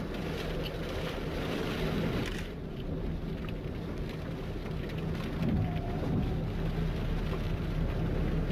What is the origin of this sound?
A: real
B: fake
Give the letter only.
A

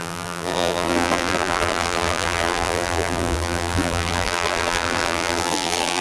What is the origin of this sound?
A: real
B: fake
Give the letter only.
B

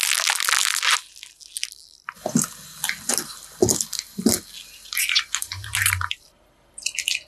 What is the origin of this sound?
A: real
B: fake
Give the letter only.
A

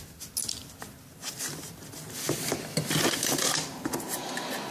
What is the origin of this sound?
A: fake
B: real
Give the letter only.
B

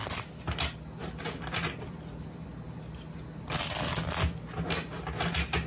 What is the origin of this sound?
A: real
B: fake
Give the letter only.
A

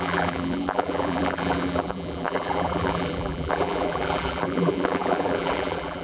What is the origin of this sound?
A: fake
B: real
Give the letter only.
A